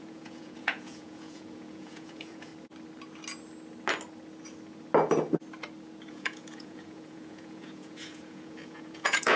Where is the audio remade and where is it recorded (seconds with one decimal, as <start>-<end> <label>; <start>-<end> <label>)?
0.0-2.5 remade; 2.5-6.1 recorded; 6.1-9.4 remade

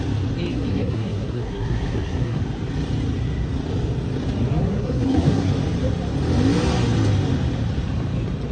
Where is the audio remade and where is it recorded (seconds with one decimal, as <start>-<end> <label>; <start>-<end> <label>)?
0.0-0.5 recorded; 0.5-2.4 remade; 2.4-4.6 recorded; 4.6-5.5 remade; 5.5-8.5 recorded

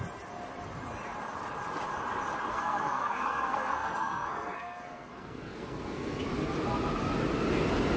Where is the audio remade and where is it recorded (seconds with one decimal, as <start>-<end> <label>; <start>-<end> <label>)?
0.0-2.5 recorded; 2.5-6.2 remade; 6.2-8.0 recorded